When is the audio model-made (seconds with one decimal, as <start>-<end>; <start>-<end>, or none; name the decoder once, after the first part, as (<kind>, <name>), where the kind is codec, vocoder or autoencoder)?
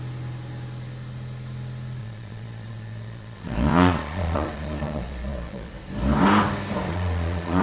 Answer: 2.0-5.7 (vocoder, Vocos); 6.9-7.6